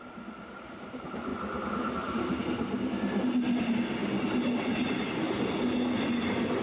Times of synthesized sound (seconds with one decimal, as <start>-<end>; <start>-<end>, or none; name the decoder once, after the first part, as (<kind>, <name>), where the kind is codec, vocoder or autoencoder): none